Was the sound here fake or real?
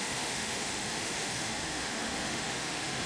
fake